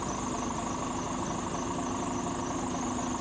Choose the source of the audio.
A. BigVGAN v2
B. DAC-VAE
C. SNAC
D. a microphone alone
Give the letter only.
D